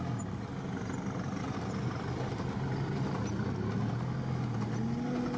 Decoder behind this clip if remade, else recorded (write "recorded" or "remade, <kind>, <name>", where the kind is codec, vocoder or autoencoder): recorded